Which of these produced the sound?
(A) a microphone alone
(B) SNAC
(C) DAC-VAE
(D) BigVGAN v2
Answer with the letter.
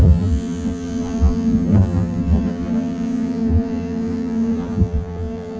D